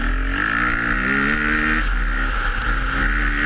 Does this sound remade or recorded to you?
recorded